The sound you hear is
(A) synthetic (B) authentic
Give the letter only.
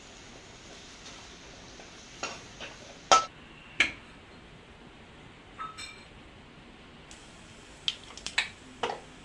B